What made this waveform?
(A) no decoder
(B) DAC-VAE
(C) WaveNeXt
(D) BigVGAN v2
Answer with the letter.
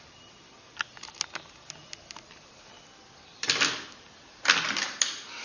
A